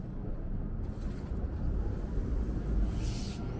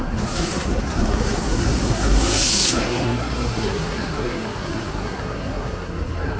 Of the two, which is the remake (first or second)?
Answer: second